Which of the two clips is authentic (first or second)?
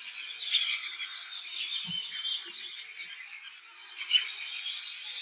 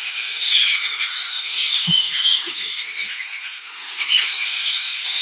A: first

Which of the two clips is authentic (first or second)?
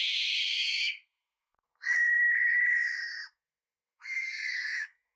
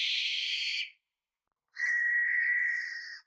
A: second